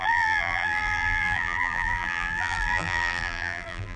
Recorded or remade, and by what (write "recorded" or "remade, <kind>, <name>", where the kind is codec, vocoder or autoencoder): remade, vocoder, BigVGAN v2